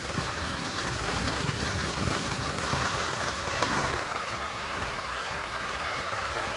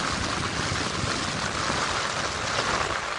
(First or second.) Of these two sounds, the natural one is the second